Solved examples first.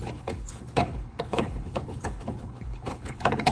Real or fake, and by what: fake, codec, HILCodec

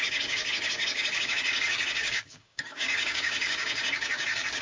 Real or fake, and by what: fake, codec, DAC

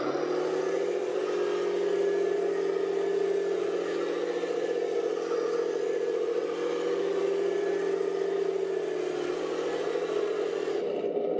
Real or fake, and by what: real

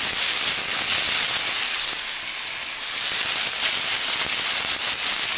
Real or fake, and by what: real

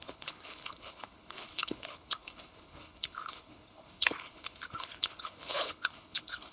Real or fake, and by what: fake, codec, HILCodec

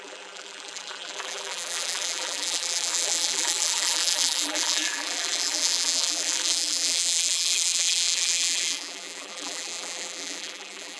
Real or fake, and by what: fake, vocoder, BigVGAN v2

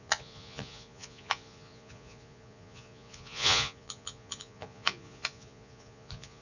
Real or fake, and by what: fake, vocoder, Vocos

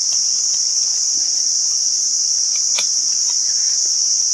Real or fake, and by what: real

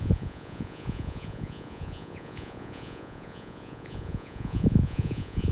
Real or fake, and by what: fake, vocoder, Vocos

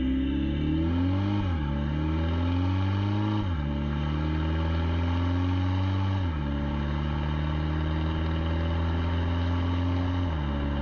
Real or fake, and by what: real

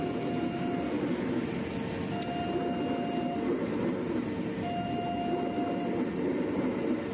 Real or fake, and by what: real